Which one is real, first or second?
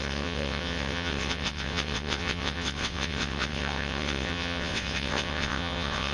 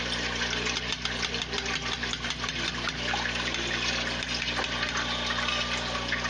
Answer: second